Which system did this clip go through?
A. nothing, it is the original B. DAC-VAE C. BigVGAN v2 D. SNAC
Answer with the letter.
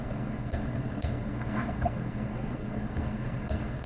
D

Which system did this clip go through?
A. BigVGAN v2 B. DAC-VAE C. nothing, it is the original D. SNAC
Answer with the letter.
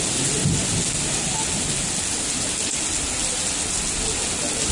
C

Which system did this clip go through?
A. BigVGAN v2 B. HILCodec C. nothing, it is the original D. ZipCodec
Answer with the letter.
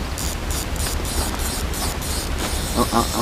A